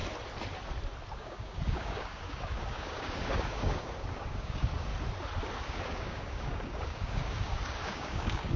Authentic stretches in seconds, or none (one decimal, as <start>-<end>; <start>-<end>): 0.0-1.1; 4.9-5.6